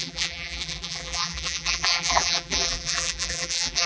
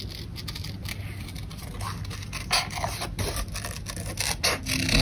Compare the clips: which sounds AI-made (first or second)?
first